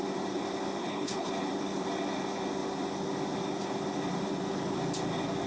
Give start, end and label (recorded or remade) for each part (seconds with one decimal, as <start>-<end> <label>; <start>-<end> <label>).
0.0-0.8 recorded; 0.8-1.3 remade; 1.3-5.5 recorded